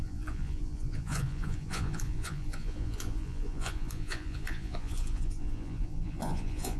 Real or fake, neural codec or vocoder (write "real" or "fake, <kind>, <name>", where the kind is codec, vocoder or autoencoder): fake, vocoder, Vocos